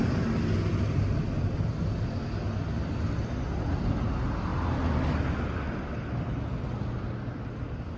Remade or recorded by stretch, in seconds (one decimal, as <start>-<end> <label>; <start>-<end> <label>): 0.0-8.0 recorded